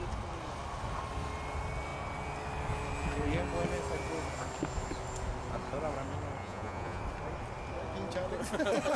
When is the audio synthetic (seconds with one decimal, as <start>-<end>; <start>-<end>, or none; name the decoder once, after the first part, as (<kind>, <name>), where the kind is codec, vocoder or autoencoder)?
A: 6.4-7.0 (vocoder, Vocos)